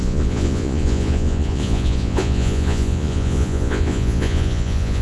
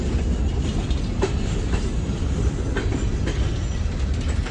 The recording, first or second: second